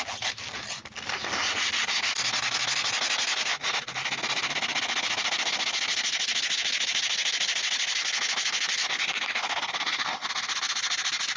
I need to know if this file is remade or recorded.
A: recorded